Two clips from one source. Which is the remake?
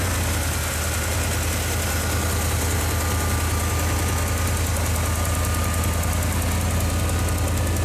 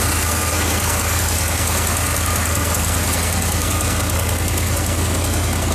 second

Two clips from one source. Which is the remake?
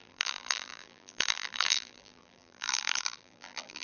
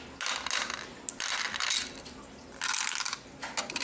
first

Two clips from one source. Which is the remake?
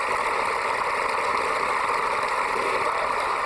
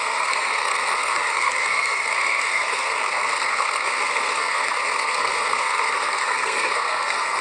second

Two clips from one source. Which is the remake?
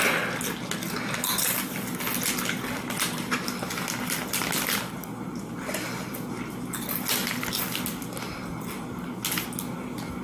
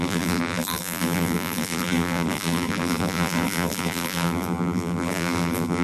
second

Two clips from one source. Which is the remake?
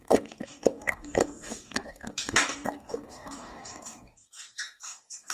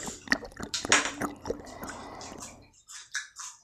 first